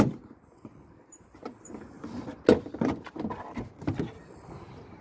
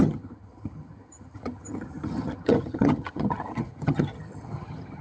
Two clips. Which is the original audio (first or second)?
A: first